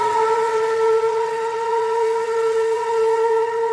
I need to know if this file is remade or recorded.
remade